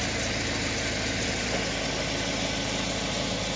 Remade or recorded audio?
recorded